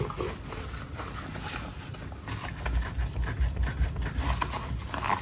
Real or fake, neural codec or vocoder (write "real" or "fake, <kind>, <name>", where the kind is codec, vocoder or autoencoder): real